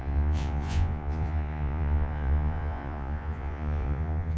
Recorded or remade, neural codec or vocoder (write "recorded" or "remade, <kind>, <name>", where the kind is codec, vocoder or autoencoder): remade, vocoder, Vocos